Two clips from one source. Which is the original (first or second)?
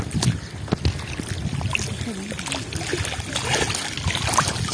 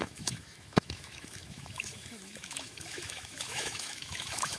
first